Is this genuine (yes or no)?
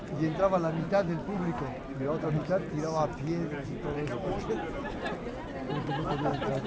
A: yes